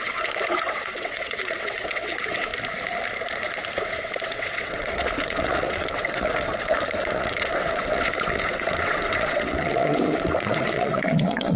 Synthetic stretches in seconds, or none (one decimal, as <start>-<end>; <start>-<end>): 0.0-2.5; 3.8-11.6